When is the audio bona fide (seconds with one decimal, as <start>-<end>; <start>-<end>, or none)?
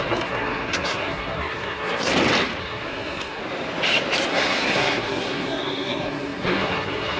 2.1-2.6; 3.4-4.3